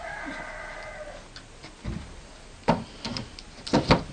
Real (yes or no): yes